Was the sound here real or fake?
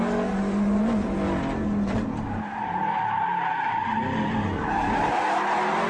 real